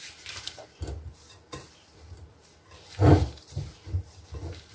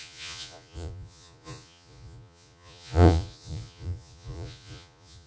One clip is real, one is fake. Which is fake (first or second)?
second